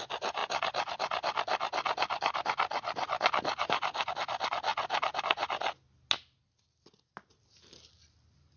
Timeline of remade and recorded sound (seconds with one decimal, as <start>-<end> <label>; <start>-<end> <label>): 0.0-8.6 recorded